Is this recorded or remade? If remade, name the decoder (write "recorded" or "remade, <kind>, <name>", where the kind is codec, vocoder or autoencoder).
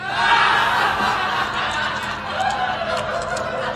recorded